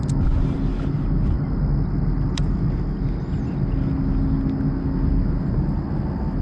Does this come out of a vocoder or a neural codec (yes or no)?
no